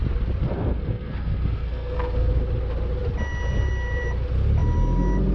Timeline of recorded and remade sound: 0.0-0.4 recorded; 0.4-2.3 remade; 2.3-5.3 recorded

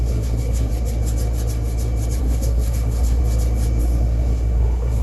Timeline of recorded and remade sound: 0.0-0.7 remade; 0.7-2.2 recorded; 2.2-3.2 remade; 3.2-3.8 recorded; 3.8-5.0 remade

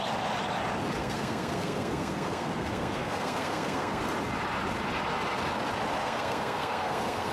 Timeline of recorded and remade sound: 0.0-1.0 recorded; 1.0-4.0 remade; 4.0-6.0 recorded; 6.0-7.3 remade